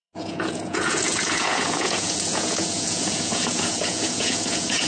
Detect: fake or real fake